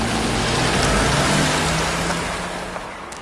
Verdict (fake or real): real